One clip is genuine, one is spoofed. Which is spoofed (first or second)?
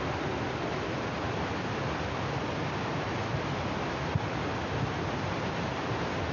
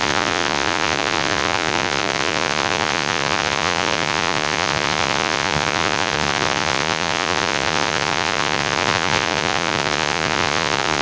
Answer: second